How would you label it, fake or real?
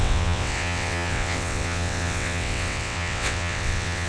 fake